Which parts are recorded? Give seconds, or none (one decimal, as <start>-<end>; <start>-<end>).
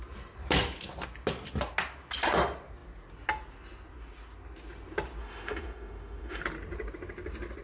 0.0-5.2; 6.4-7.6